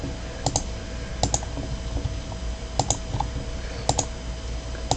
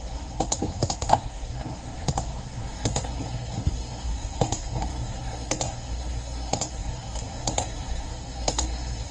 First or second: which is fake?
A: second